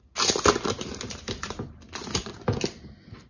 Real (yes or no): yes